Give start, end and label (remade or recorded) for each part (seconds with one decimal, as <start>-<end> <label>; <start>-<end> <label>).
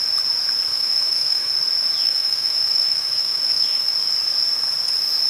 0.0-0.7 recorded; 0.7-1.5 remade; 1.5-2.0 recorded; 2.0-3.9 remade; 3.9-5.3 recorded